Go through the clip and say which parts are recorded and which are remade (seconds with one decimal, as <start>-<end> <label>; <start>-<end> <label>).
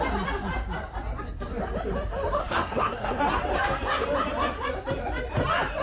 0.0-2.4 recorded; 2.4-3.2 remade; 3.2-5.8 recorded